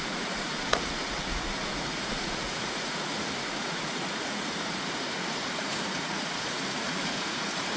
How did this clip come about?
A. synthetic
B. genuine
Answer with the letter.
A